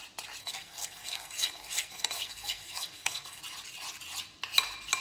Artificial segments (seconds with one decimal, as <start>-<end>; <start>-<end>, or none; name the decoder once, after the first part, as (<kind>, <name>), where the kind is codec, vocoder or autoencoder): 0.4-3.4 (codec, SNAC)